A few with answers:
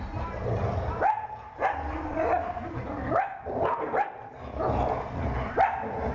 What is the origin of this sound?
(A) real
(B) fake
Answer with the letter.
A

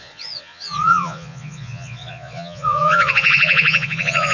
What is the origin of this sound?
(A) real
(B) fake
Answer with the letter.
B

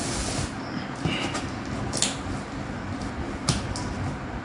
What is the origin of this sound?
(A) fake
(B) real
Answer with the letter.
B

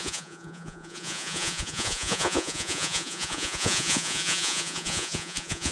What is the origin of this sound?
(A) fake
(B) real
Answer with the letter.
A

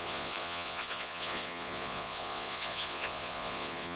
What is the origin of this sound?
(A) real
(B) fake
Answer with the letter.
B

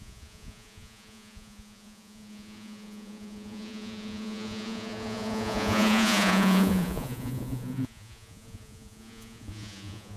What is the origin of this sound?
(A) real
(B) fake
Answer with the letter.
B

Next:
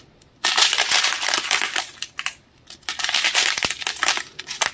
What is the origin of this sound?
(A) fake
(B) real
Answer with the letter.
B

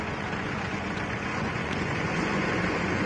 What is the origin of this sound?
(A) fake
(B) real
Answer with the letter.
A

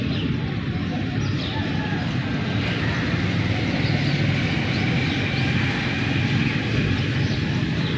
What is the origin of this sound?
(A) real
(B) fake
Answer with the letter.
A